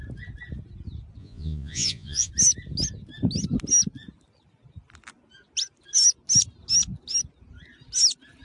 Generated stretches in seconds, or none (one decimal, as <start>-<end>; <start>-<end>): 1.2-2.3